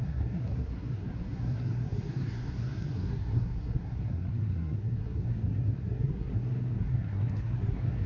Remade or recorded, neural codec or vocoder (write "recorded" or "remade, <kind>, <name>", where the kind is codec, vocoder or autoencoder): remade, codec, SNAC